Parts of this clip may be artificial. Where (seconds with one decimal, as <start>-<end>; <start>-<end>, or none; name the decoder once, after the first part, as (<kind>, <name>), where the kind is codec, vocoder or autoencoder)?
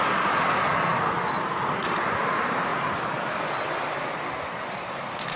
none